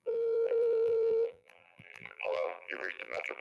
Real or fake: fake